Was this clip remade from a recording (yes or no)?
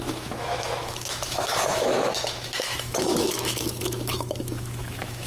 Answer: yes